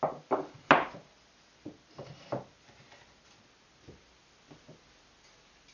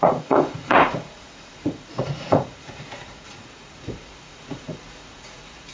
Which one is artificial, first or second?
second